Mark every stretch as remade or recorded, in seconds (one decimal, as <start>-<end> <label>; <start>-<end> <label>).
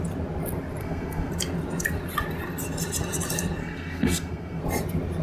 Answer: 0.0-0.8 recorded; 0.8-1.3 remade; 1.3-3.6 recorded; 3.6-4.6 remade; 4.6-5.2 recorded